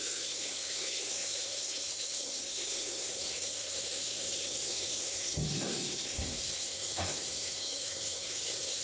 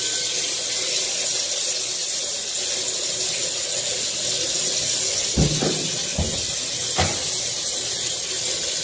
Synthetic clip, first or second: first